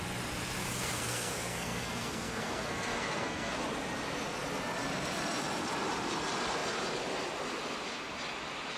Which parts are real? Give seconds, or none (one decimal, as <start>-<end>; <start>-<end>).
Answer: 0.0-0.6; 3.6-8.8